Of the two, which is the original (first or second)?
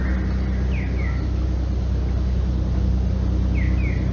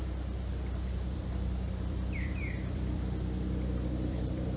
first